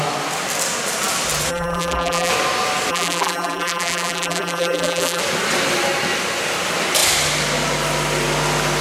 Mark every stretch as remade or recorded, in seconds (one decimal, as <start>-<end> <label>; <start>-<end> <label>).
0.0-1.5 recorded; 1.5-2.3 remade; 2.3-2.9 recorded; 2.9-5.2 remade; 5.2-8.8 recorded